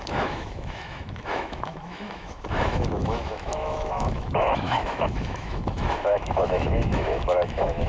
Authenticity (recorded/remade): remade